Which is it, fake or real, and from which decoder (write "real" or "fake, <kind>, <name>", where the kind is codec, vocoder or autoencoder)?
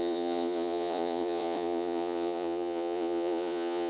fake, vocoder, Vocos